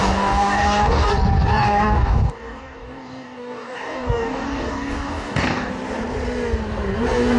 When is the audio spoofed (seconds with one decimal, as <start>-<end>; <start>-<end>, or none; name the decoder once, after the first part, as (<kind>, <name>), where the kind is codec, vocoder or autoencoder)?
0.0-1.1 (codec, DAC); 1.5-5.7